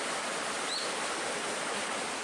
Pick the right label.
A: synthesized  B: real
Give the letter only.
B